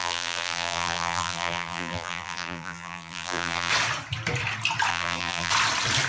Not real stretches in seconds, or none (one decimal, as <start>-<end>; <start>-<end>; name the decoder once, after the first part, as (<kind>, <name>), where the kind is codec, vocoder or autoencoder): 0.0-3.7 (vocoder, BigVGAN v2); 4.9-5.5